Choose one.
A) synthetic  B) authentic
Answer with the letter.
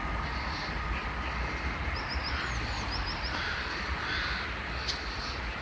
B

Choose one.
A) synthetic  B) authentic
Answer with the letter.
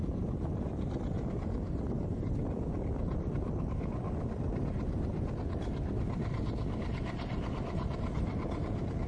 B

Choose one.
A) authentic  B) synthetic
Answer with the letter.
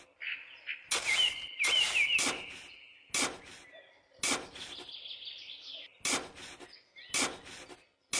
A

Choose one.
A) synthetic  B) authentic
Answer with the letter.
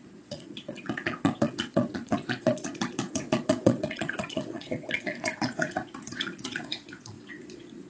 A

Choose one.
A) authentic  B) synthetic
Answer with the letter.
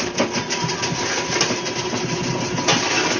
A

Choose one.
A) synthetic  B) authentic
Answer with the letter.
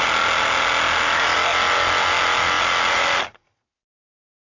B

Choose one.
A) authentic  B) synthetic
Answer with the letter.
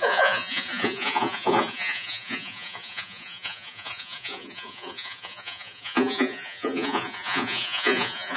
B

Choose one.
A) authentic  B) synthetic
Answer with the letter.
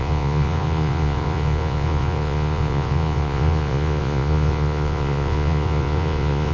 B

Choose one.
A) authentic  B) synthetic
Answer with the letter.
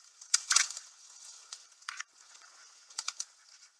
B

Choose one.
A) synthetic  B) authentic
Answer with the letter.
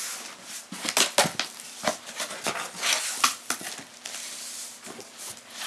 B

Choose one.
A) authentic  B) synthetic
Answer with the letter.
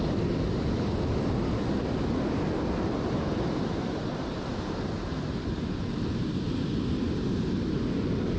A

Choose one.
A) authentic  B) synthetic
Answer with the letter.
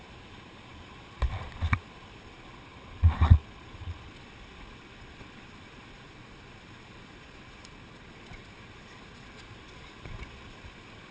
B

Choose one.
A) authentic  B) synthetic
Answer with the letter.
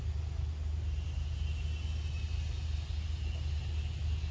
A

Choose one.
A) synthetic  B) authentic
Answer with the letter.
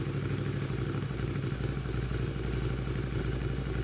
B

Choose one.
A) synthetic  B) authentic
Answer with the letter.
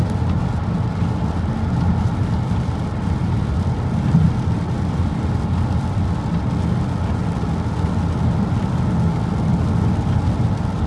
B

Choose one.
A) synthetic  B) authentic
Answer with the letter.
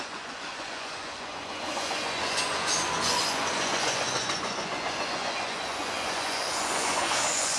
A